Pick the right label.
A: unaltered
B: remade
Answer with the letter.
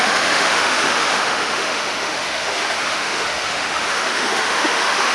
B